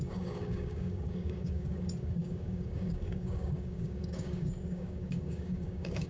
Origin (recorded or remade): remade